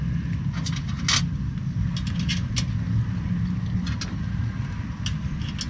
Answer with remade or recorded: recorded